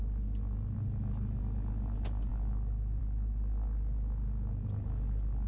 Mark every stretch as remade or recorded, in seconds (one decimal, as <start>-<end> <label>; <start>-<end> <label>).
0.0-5.5 recorded